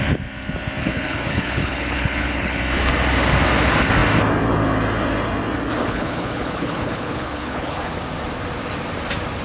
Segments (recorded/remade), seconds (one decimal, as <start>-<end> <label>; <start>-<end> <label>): 0.0-0.8 recorded; 0.8-2.6 remade; 2.6-5.8 recorded; 5.8-7.9 remade; 7.9-9.4 recorded